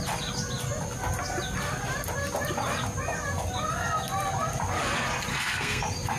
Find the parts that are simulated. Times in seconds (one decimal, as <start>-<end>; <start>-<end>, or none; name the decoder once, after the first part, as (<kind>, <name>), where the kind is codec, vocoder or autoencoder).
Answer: 5.3-5.8 (codec, SNAC)